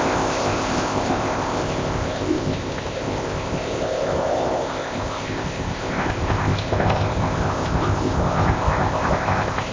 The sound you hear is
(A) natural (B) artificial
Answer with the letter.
B